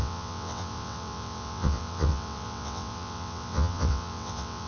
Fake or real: fake